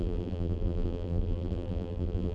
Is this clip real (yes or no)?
no